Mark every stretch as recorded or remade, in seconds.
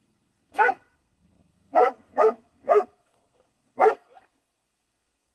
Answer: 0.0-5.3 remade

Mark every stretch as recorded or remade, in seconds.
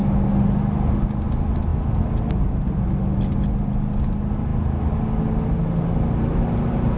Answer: 0.0-7.0 recorded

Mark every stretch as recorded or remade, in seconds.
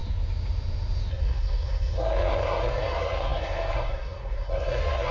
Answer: 0.0-1.1 recorded; 1.1-5.1 remade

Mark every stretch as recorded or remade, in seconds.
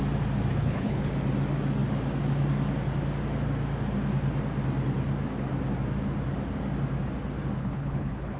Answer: 0.0-0.5 recorded; 0.5-1.1 remade; 1.1-7.6 recorded; 7.6-8.4 remade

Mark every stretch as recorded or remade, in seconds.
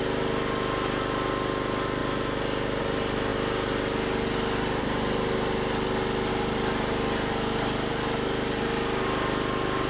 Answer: 0.0-9.9 recorded